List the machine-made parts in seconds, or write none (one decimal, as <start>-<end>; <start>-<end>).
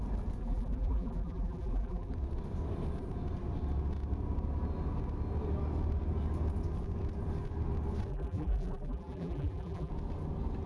0.4-2.1; 8.1-9.9